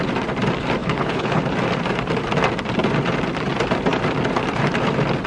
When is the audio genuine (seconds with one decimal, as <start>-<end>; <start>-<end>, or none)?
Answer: 0.0-0.8; 1.4-5.3